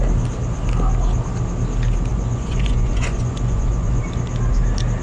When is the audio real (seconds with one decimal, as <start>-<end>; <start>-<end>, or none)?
0.0-2.1; 4.0-5.0